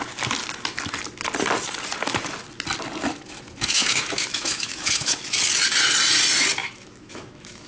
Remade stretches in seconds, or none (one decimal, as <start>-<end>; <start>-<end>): 3.1-5.2; 6.6-7.7